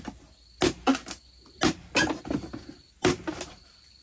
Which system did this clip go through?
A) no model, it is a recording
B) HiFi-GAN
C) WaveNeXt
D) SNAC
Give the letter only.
A